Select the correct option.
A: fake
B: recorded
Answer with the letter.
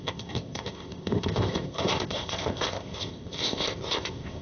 A